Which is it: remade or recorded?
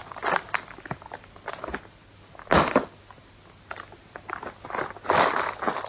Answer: recorded